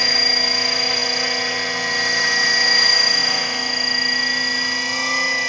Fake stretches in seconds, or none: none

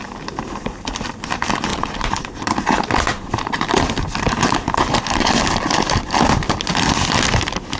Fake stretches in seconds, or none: 1.7-5.4 (vocoder, BigVGAN v2)